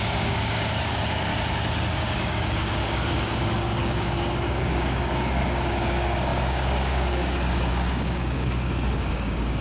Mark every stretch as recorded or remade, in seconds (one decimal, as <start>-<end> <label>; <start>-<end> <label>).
0.0-1.3 remade; 1.3-1.9 recorded; 1.9-9.6 remade